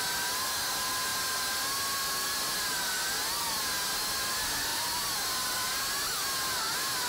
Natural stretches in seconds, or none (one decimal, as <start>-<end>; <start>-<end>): 0.0-7.1